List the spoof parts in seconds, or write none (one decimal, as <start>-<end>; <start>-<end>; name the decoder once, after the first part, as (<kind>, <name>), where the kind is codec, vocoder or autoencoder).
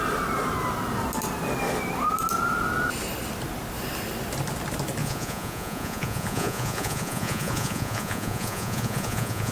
5.0-9.5 (vocoder, Vocos)